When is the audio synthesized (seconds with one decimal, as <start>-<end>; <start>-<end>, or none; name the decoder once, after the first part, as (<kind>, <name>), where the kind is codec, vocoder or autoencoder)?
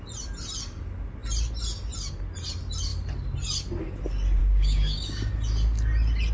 4.4-5.3 (codec, DAC)